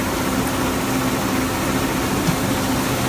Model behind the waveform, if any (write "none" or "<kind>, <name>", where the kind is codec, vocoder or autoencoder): none